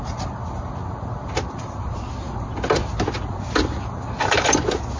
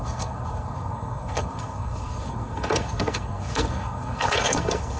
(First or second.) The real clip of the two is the first